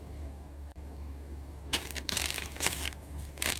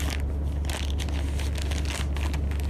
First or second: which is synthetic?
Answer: first